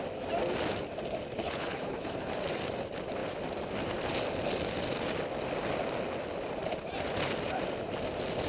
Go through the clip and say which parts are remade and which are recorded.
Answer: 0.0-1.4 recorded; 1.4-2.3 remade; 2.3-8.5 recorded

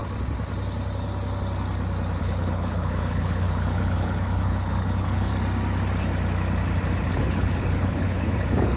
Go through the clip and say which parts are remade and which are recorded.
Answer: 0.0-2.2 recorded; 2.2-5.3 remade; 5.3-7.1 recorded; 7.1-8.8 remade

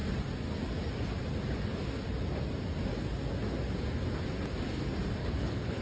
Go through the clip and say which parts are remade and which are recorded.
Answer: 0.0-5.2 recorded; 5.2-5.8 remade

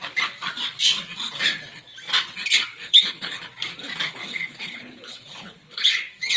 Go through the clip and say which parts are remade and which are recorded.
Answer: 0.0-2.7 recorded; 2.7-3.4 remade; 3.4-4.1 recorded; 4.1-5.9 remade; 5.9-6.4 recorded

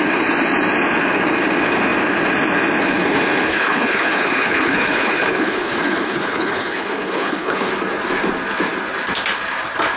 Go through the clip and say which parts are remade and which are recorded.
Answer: 0.0-3.5 recorded; 3.5-7.7 remade; 7.7-10.0 recorded